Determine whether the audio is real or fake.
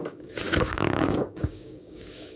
fake